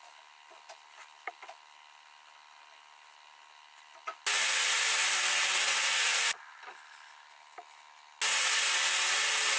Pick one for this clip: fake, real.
real